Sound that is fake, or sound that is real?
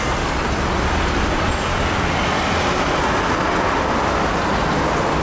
real